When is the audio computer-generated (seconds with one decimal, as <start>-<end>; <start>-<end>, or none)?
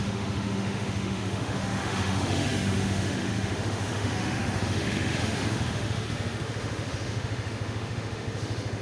0.0-8.8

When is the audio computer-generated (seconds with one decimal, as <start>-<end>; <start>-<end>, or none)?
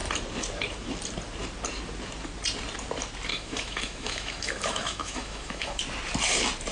3.3-5.8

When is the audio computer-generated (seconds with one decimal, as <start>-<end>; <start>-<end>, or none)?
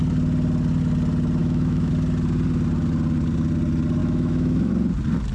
1.4-1.9; 4.0-4.7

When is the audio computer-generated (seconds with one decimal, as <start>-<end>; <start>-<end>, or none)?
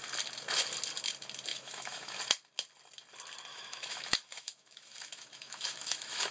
1.5-2.2; 3.5-6.3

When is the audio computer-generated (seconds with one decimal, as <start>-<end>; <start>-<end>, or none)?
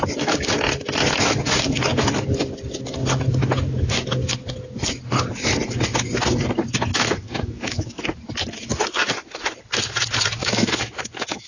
6.9-8.0; 10.4-11.5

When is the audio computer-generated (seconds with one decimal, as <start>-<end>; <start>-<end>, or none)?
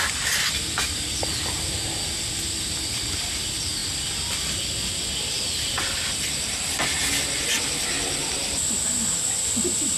none